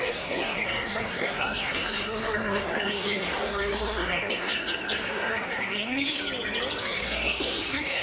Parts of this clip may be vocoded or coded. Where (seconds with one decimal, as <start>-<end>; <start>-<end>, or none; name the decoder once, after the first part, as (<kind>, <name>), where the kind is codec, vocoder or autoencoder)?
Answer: 0.0-6.2 (codec, SNAC); 6.8-8.0